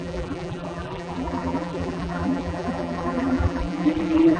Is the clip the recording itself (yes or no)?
no